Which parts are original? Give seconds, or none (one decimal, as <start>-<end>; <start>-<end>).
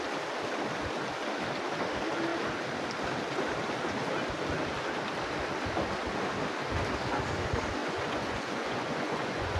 0.0-7.8